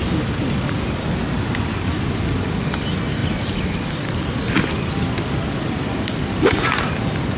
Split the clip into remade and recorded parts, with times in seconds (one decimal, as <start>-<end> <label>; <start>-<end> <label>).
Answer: 0.0-7.4 recorded